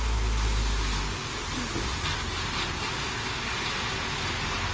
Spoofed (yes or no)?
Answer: no